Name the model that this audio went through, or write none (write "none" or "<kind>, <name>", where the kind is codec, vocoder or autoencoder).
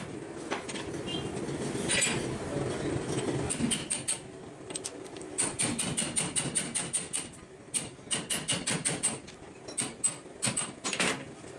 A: none